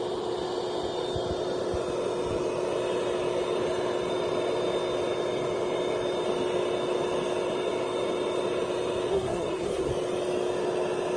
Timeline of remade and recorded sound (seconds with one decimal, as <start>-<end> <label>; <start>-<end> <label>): 0.0-9.1 recorded; 9.1-9.9 remade; 9.9-11.2 recorded